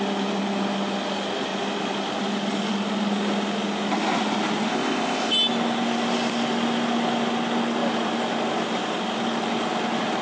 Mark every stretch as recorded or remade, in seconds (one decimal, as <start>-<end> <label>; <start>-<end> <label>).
0.0-4.7 recorded; 4.7-5.3 remade; 5.3-10.2 recorded